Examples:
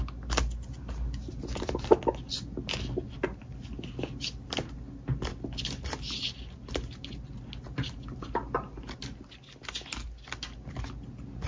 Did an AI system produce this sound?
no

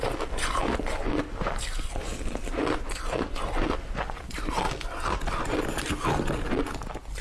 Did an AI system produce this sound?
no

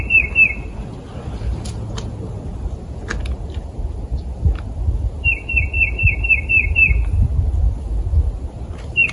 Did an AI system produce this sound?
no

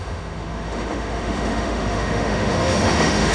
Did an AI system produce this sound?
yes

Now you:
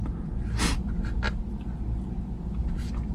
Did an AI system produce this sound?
no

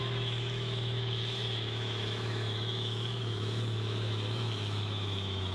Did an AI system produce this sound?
yes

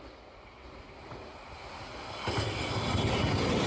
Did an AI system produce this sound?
no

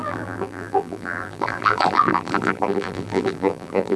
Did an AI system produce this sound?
yes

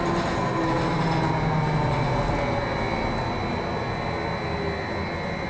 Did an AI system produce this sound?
no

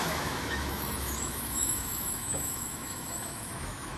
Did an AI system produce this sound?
yes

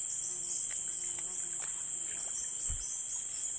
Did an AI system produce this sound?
no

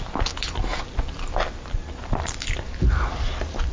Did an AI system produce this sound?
no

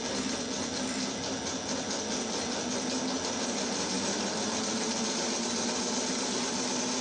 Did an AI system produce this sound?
no